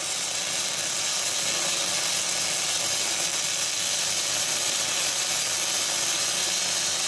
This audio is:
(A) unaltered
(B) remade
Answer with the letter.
A